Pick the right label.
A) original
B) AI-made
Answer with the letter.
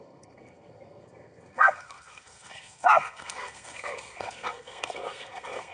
B